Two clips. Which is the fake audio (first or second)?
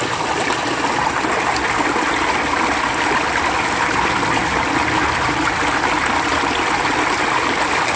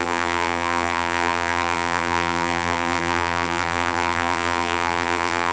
second